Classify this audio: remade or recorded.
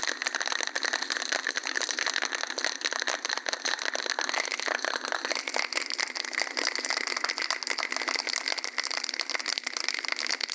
recorded